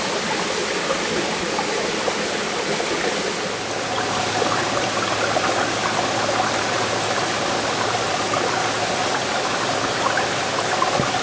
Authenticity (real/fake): real